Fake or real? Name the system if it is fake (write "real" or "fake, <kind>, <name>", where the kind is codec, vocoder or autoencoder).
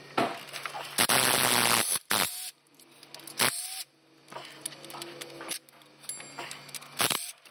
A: real